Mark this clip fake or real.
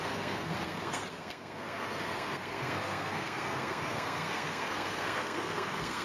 fake